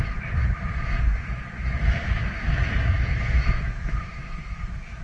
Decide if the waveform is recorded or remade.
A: remade